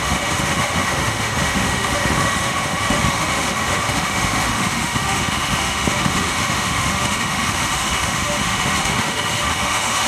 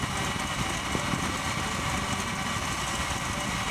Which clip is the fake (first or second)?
first